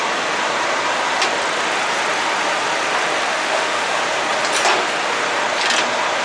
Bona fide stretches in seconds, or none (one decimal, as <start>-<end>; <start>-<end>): 0.0-3.3; 4.0-6.2